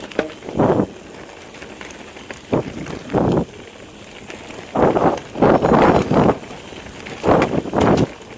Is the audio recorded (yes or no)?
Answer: yes